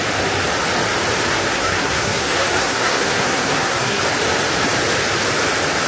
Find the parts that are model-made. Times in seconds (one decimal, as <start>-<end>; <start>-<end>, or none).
1.3-4.0